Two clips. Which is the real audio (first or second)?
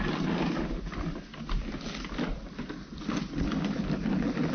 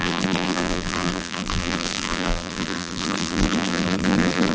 first